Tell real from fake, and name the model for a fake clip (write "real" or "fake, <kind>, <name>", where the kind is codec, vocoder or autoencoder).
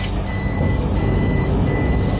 fake, codec, DAC